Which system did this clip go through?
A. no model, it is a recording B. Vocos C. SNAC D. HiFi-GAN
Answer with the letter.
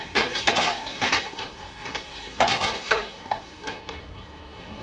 C